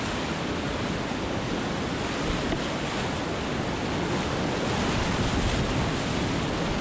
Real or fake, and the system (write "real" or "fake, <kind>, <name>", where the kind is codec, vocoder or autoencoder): real